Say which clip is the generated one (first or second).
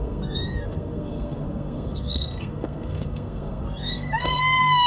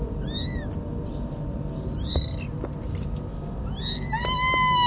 first